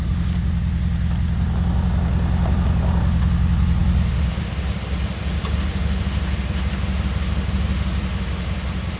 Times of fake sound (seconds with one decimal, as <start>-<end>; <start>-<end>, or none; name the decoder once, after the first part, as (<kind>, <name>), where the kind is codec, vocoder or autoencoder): none